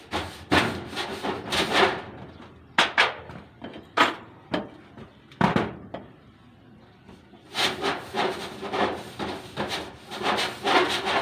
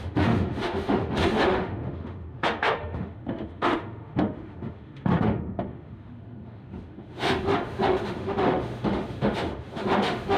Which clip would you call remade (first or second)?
second